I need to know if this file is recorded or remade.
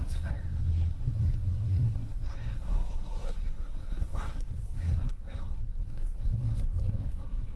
remade